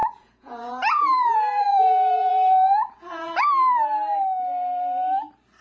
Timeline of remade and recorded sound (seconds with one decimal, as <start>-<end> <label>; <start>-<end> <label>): 0.0-3.4 remade; 3.4-5.6 recorded